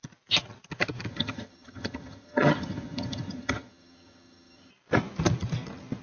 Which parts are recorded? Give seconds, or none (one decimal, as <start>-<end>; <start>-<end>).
0.0-1.1; 4.7-6.0